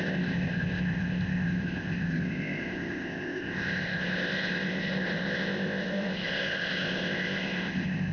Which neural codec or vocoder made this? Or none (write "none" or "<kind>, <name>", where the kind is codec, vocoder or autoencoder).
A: codec, ZipCodec